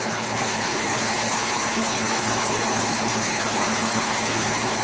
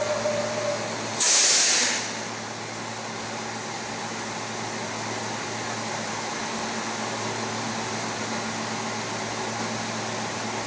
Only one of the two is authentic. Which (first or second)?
second